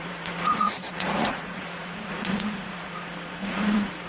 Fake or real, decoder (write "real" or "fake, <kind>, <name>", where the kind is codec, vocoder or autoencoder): fake, vocoder, Vocos